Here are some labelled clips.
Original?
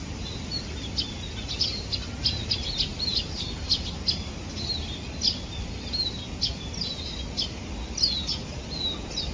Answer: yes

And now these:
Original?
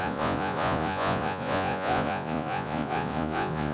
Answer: no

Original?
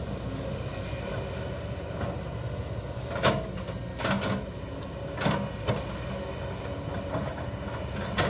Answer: yes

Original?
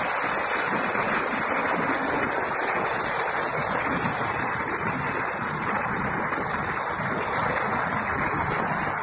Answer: yes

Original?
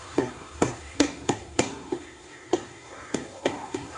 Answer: no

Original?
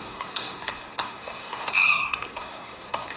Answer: no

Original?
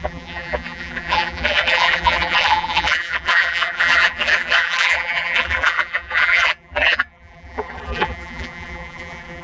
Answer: no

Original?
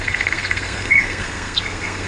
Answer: no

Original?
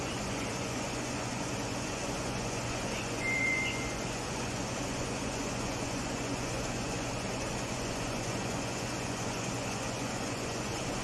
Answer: no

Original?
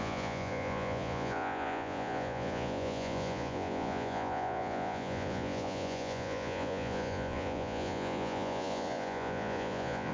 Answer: no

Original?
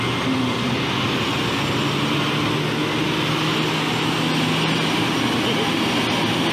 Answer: yes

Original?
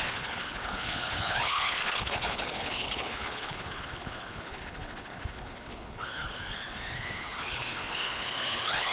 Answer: no